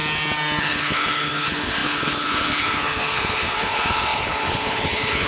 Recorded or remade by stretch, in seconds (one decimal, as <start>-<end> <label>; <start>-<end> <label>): 0.0-0.6 recorded; 0.6-5.3 remade